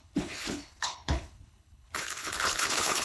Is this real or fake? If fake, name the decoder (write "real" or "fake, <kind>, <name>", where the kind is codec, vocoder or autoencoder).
fake, codec, HILCodec